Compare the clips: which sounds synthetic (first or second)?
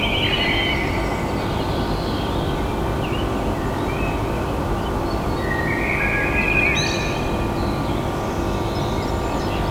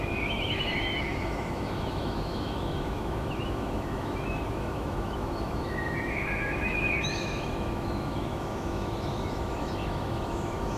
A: second